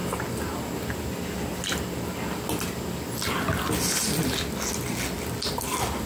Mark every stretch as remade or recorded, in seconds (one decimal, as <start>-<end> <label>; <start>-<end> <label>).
0.0-6.1 recorded